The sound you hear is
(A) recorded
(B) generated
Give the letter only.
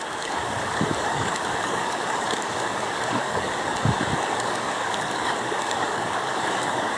B